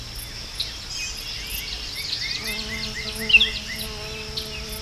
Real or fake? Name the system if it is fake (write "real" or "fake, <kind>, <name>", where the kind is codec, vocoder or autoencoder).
real